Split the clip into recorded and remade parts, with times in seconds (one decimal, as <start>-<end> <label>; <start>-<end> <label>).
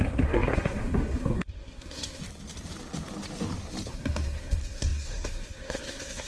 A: 0.0-2.2 remade; 2.2-3.9 recorded; 3.9-6.3 remade